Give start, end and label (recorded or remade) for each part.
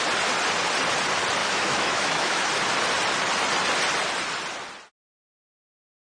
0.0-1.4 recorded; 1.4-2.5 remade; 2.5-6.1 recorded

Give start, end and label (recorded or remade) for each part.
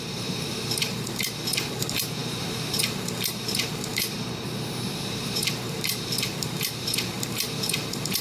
0.0-8.2 remade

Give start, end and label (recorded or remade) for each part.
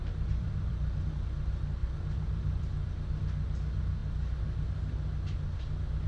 0.0-1.1 remade; 1.1-1.8 recorded; 1.8-3.2 remade; 3.2-6.1 recorded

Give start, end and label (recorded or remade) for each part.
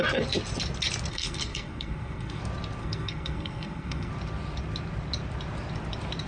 0.0-1.1 recorded; 1.1-2.4 remade; 2.4-2.8 recorded; 2.8-4.1 remade; 4.1-6.3 recorded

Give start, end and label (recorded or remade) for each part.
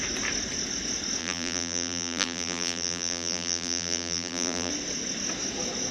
0.0-1.2 recorded; 1.2-4.7 remade; 4.7-5.9 recorded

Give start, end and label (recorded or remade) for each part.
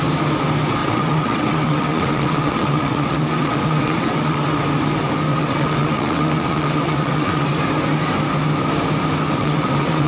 0.0-0.8 recorded; 0.8-4.6 remade; 4.6-5.3 recorded; 5.3-7.6 remade; 7.6-9.4 recorded; 9.4-10.1 remade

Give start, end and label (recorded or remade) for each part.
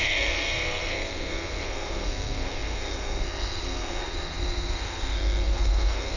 0.0-6.2 remade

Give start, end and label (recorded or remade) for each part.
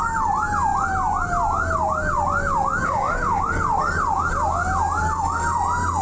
0.0-6.0 recorded